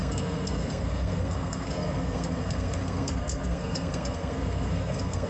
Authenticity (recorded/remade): remade